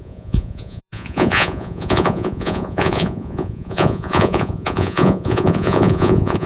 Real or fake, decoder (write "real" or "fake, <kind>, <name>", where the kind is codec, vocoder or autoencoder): fake, vocoder, Vocos